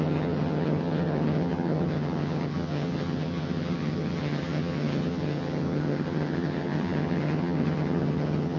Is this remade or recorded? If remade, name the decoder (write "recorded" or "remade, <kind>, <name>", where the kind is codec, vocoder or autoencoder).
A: remade, vocoder, HiFi-GAN